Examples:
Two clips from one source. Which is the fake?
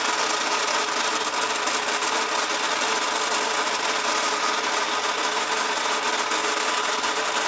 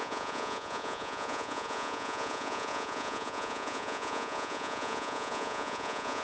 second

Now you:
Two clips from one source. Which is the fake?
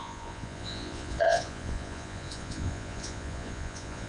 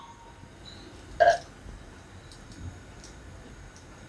first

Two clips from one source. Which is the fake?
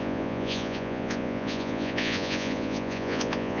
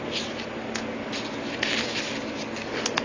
first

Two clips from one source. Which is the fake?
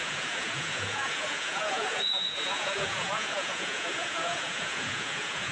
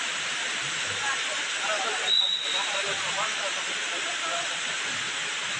first